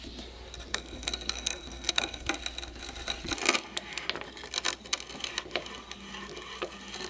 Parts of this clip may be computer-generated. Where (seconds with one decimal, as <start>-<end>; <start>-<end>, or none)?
0.7-2.3